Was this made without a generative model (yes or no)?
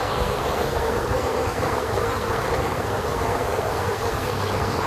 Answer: no